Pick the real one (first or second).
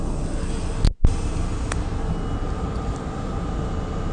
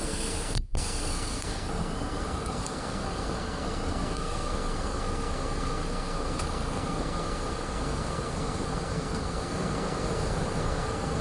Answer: first